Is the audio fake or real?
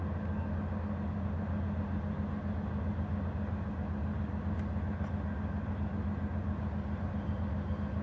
real